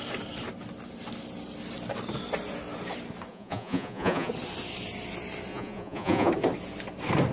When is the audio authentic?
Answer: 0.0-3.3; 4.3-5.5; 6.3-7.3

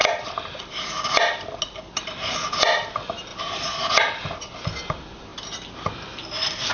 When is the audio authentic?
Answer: 0.0-6.7

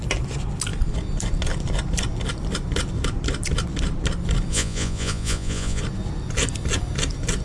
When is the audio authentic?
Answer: 0.0-4.5; 5.8-7.4

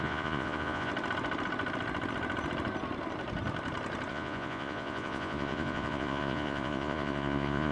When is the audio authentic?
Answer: 0.9-4.1

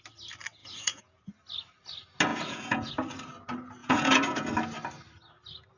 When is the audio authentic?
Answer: 0.0-0.6; 1.2-2.3; 2.9-3.8; 4.5-5.8